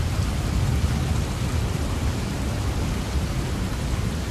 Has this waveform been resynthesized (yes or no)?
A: no